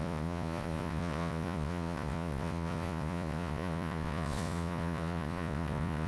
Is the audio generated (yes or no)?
yes